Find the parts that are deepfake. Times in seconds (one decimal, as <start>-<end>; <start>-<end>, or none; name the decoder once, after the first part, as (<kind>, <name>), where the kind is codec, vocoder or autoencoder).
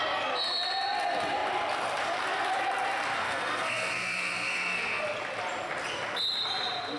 3.2-5.0 (codec, SNAC)